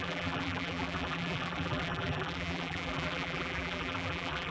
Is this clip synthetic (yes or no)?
yes